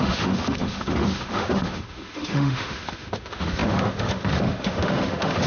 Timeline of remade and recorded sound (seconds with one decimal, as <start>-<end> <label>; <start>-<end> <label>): 0.0-5.5 remade